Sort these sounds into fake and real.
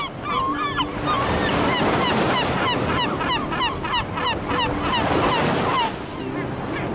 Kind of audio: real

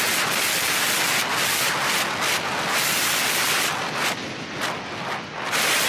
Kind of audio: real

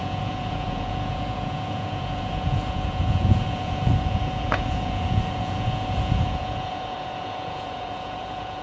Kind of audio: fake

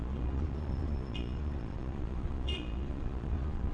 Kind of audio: fake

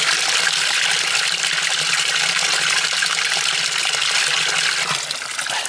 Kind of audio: real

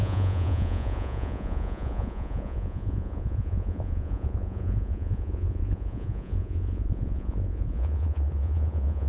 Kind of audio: fake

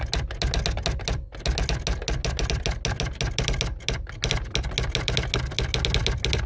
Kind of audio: real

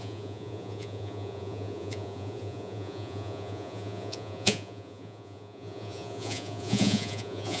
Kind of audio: fake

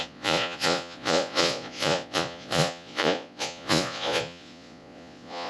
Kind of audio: fake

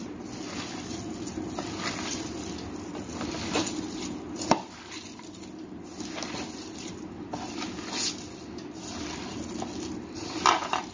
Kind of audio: real